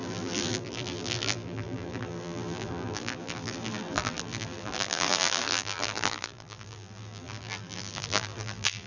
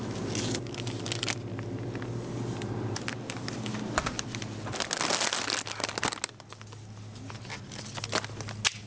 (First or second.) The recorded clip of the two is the second